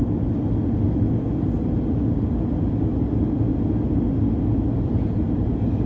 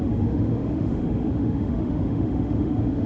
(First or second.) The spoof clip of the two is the second